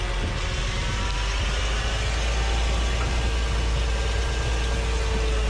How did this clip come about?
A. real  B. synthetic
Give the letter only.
A